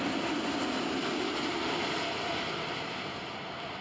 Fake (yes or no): no